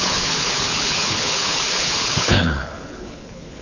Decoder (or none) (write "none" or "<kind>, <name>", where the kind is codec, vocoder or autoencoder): codec, HILCodec